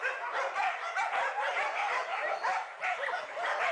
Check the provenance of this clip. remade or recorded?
remade